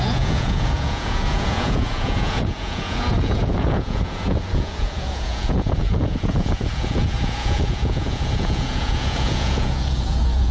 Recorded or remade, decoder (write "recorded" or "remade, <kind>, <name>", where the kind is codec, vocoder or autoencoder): remade, vocoder, Vocos